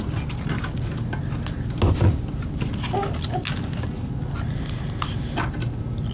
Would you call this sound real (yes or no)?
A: yes